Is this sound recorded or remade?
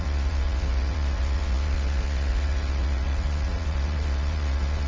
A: remade